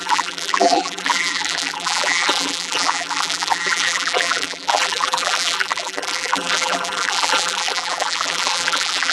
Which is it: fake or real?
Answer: fake